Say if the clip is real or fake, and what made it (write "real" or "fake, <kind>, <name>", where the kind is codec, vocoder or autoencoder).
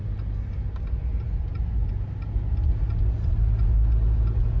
real